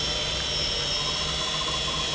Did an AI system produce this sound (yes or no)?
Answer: no